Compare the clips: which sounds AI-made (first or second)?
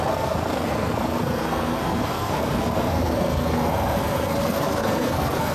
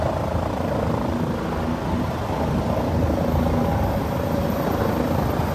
first